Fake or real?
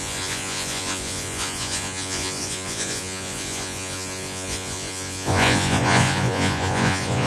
fake